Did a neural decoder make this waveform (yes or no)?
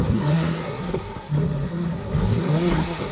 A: yes